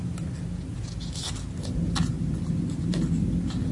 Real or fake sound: real